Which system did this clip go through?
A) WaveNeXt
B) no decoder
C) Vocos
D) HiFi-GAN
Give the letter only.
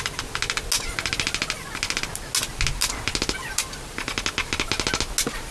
B